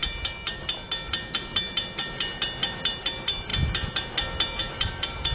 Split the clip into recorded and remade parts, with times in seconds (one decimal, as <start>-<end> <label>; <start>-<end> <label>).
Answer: 0.0-5.3 recorded